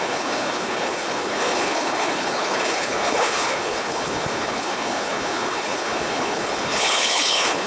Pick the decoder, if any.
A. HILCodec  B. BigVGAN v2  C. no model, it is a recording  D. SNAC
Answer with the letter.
A